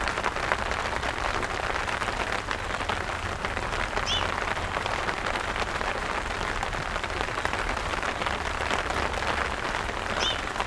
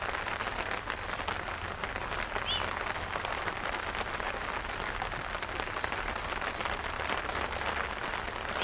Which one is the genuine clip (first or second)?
second